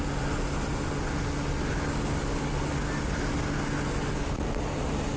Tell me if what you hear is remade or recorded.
recorded